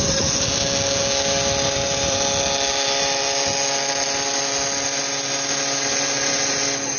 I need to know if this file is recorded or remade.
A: recorded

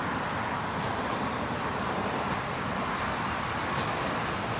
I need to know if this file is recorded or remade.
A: recorded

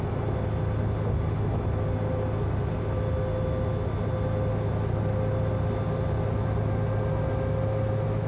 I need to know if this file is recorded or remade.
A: recorded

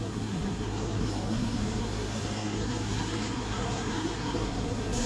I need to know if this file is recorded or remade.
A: remade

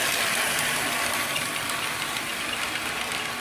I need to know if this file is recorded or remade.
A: recorded